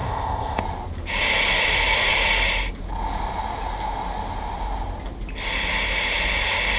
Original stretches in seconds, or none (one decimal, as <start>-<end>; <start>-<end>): 0.6-6.8